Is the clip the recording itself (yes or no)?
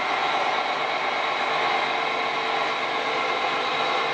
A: yes